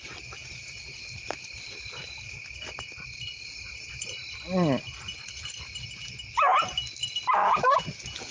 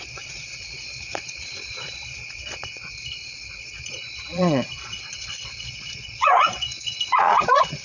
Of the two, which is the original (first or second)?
first